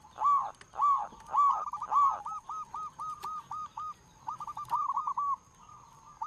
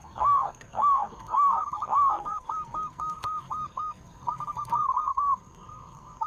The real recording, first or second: first